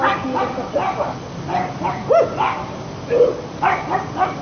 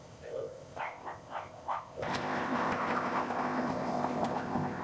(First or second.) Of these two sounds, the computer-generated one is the second